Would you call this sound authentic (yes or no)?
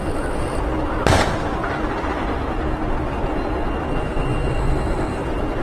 yes